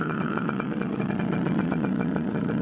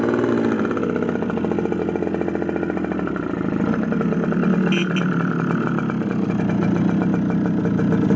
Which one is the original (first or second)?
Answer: second